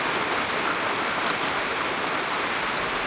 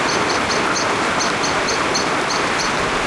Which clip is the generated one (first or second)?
first